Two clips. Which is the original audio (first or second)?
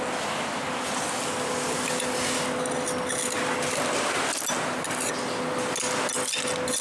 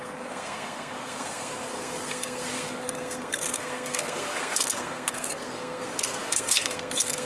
first